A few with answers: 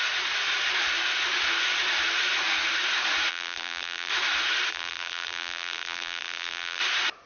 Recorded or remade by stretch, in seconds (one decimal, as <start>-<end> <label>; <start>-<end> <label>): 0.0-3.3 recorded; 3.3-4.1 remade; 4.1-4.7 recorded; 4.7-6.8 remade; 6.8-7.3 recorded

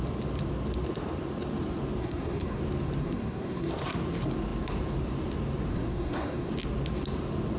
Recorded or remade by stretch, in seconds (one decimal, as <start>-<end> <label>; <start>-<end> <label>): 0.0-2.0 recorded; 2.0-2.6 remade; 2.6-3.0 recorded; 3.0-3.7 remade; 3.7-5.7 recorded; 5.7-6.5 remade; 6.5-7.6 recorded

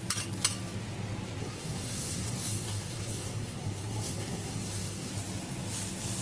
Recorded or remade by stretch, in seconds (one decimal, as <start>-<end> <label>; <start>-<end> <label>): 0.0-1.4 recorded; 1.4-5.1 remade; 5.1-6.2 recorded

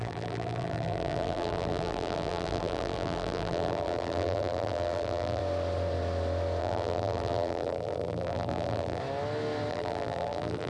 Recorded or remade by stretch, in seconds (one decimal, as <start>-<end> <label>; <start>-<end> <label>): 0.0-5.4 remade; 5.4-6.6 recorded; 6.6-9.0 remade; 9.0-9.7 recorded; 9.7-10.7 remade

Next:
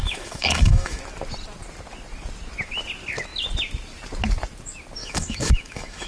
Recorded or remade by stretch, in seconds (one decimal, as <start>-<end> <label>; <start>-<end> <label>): 0.0-1.0 remade; 1.0-5.0 recorded; 5.0-6.1 remade

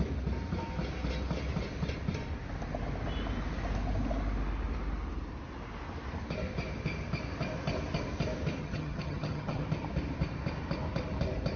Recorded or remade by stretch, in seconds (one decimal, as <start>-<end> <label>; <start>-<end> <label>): 0.0-8.6 recorded; 8.6-9.6 remade; 9.6-11.6 recorded

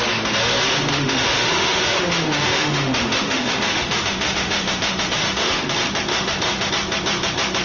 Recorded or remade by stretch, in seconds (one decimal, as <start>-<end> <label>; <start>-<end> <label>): 0.0-0.9 recorded; 0.9-5.5 remade; 5.5-6.1 recorded; 6.1-6.7 remade; 6.7-7.6 recorded

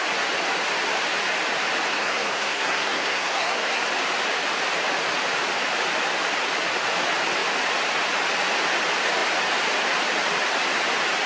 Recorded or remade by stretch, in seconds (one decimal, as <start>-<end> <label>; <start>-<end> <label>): 0.0-1.9 recorded; 1.9-3.8 remade; 3.8-11.3 recorded